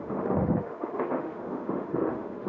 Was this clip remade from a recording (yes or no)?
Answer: yes